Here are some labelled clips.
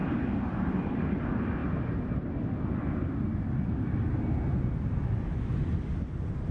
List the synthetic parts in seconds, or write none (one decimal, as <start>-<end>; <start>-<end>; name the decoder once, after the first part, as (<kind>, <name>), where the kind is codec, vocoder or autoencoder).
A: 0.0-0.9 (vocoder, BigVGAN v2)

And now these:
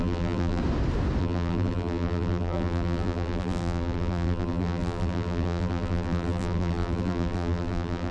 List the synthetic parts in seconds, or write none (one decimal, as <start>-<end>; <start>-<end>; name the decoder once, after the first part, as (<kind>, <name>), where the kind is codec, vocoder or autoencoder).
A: 0.0-0.6 (vocoder, BigVGAN v2); 1.2-8.1

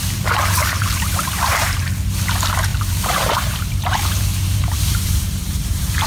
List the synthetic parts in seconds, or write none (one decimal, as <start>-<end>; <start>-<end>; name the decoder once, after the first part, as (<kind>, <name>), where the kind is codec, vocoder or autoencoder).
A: 0.6-1.9 (vocoder, BigVGAN v2); 2.7-6.1

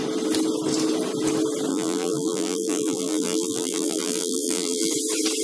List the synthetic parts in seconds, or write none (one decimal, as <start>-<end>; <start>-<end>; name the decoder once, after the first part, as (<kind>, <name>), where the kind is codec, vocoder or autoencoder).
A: 1.7-4.9 (vocoder, BigVGAN v2)

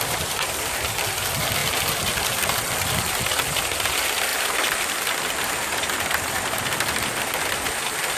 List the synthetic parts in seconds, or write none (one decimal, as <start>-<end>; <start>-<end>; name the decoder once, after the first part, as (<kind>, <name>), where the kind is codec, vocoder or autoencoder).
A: none

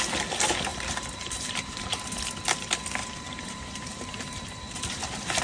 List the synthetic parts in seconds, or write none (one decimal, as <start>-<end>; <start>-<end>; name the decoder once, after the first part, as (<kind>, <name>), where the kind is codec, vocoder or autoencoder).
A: 0.7-1.9 (vocoder, BigVGAN v2); 3.0-5.4

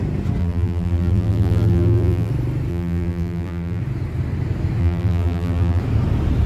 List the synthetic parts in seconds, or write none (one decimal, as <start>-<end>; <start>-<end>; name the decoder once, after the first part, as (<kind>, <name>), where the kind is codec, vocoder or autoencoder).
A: 0.4-2.3 (vocoder, BigVGAN v2); 2.7-3.8; 4.8-5.8